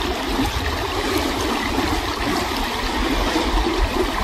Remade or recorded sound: recorded